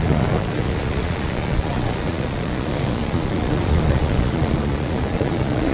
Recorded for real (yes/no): no